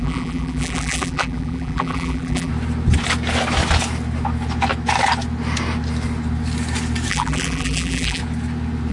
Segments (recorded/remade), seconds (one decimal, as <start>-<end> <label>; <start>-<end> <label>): 0.0-2.5 remade; 2.5-7.1 recorded; 7.1-8.2 remade; 8.2-8.9 recorded